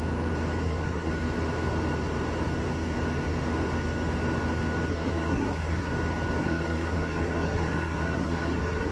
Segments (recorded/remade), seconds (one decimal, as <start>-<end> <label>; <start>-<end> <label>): 0.0-0.6 recorded; 0.6-1.1 remade; 1.1-4.9 recorded; 4.9-5.9 remade; 5.9-6.4 recorded; 6.4-8.9 remade